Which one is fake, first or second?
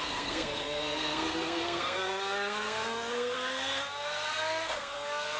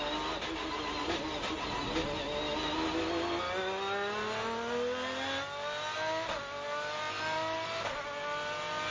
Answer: first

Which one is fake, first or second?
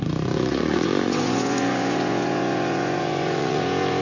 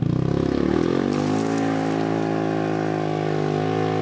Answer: first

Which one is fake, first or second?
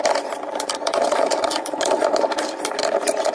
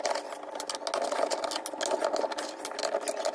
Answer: first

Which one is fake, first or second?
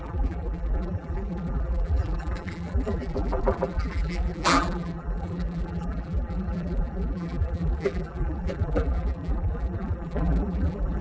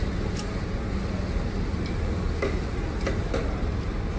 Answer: first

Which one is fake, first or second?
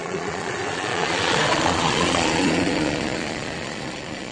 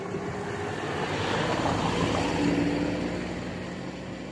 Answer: first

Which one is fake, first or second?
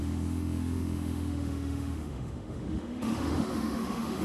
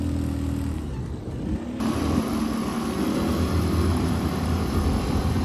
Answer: first